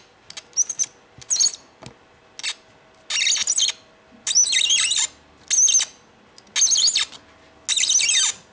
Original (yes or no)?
yes